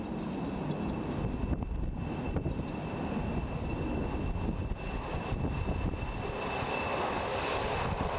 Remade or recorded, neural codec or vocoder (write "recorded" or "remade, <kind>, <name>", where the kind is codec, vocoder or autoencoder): recorded